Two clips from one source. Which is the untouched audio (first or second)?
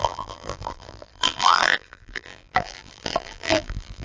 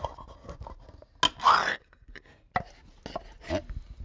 second